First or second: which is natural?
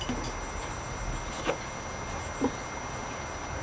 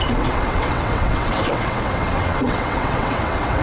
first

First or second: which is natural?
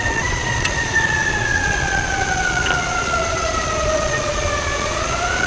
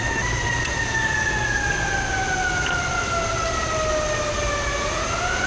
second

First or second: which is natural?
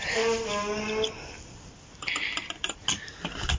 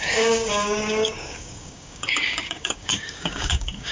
first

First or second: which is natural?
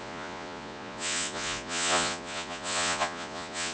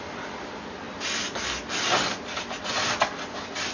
second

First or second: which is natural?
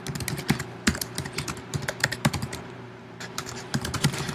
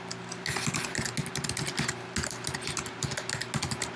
second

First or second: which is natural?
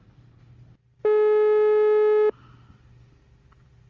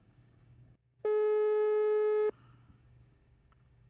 first